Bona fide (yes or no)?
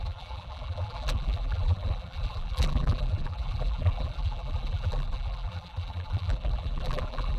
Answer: no